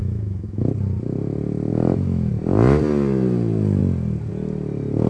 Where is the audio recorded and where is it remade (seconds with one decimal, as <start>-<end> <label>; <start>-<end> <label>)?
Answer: 0.0-0.6 remade; 0.6-1.7 recorded; 1.7-2.3 remade; 2.3-5.1 recorded